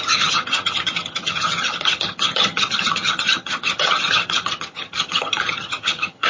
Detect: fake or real fake